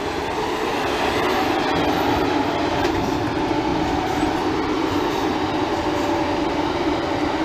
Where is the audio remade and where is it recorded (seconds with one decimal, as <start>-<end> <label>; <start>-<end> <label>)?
0.0-3.7 recorded; 3.7-5.7 remade; 5.7-7.4 recorded